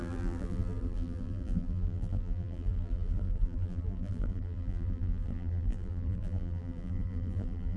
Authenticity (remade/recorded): remade